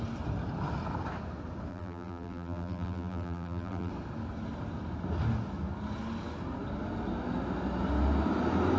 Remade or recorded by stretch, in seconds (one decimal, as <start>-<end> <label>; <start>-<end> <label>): 0.0-1.7 recorded; 1.7-3.9 remade; 3.9-8.8 recorded